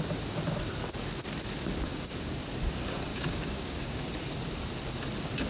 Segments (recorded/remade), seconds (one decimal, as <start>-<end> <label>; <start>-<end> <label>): 0.0-1.9 recorded; 1.9-2.4 remade; 2.4-3.1 recorded; 3.1-4.1 remade; 4.1-5.5 recorded